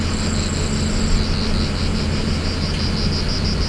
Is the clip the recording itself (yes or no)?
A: yes